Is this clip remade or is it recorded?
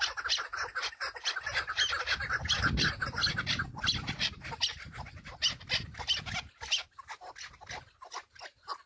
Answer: recorded